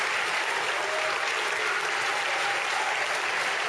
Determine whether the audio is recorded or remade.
recorded